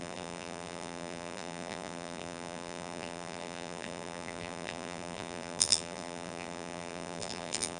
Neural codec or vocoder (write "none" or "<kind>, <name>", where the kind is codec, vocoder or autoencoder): vocoder, BigVGAN v2